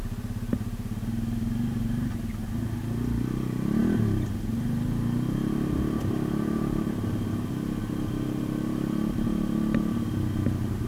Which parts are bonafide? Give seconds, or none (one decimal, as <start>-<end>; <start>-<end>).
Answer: 0.0-10.9